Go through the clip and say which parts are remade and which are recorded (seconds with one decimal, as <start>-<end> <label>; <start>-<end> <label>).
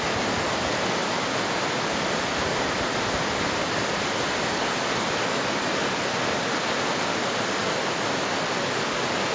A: 0.0-9.3 recorded